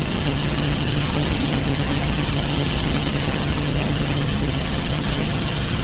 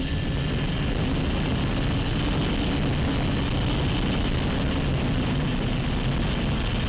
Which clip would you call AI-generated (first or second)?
first